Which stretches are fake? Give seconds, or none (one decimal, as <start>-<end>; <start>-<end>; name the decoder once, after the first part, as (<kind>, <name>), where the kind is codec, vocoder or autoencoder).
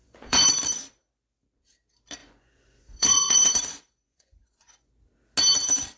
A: 0.0-0.6 (vocoder, Vocos); 2.2-4.9